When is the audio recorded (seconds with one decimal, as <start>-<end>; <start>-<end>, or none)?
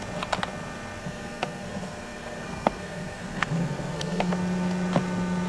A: 0.0-1.0; 4.3-5.5